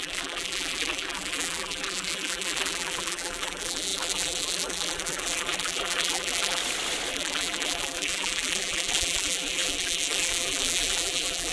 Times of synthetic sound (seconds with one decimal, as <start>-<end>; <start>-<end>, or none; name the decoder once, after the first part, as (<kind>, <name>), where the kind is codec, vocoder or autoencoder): 0.0-6.6 (vocoder, BigVGAN v2); 7.1-11.5